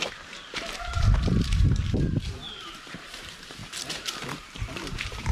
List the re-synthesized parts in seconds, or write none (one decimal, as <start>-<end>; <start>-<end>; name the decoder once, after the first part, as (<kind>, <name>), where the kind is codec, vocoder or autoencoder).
0.0-3.6 (vocoder, BigVGAN v2); 4.2-5.3